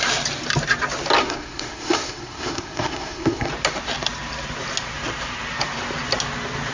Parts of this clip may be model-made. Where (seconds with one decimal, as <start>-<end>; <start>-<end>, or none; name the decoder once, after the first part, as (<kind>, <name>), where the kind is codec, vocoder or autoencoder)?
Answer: 1.2-3.5 (codec, SNAC)